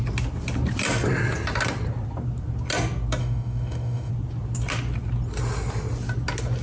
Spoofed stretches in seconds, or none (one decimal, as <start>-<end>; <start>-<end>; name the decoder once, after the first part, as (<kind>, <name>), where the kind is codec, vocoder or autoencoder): 3.2-4.1 (autoencoder, DAC-VAE)

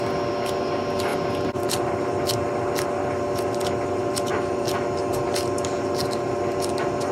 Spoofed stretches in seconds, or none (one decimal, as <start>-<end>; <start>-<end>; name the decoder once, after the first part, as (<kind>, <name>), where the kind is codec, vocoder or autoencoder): none

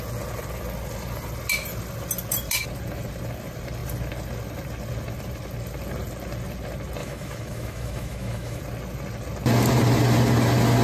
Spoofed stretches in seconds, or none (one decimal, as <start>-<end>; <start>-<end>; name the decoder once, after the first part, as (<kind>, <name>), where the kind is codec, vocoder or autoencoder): 7.0-8.6 (autoencoder, DAC-VAE)

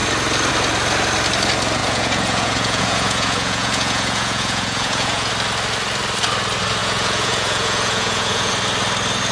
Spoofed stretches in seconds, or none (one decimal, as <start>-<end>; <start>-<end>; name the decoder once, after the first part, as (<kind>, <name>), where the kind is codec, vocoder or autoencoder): 1.8-5.3 (vocoder, Vocos); 6.8-8.5